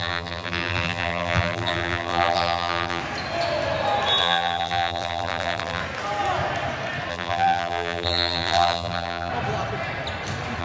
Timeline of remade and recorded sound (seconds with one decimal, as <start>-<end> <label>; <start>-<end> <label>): 0.0-3.0 remade; 3.0-4.2 recorded; 4.2-5.8 remade; 5.8-7.1 recorded; 7.1-9.3 remade; 9.3-10.6 recorded